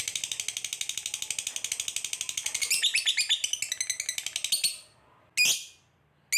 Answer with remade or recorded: recorded